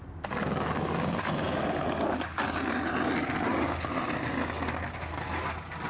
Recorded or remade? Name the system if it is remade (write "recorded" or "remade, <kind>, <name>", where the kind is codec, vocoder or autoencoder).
recorded